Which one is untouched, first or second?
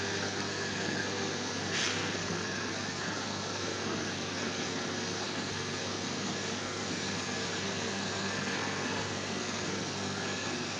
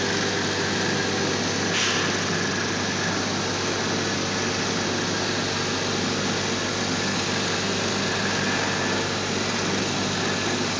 second